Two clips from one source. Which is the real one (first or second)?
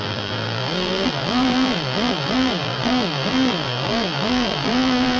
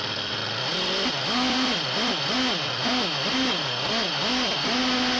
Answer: second